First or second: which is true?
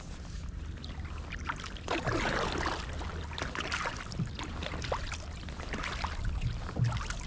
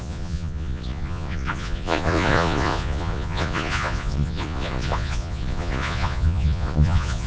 first